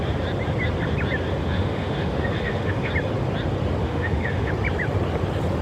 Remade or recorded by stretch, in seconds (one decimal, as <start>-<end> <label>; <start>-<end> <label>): 0.0-1.4 recorded; 1.4-2.9 remade; 2.9-3.8 recorded; 3.8-4.5 remade; 4.5-5.6 recorded